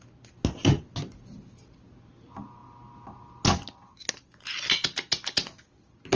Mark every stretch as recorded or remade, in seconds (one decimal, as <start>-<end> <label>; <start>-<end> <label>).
0.0-6.2 recorded